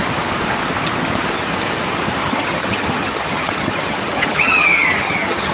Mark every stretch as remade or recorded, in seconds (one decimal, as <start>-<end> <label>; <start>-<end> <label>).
0.0-2.2 recorded; 2.2-5.5 remade